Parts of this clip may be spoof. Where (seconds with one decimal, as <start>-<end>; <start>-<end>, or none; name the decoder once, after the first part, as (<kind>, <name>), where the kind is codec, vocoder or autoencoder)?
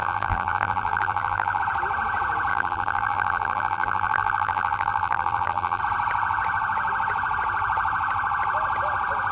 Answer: 0.0-1.6 (vocoder, BigVGAN v2); 2.5-5.8